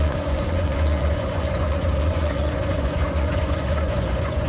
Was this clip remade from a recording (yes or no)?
yes